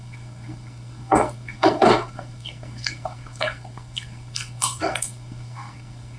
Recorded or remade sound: remade